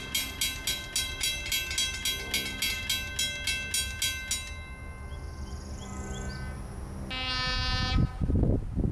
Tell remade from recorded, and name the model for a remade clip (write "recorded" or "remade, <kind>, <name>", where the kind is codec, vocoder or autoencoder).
recorded